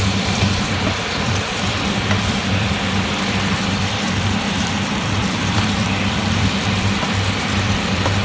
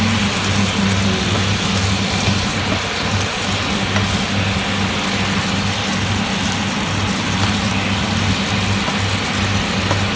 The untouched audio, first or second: second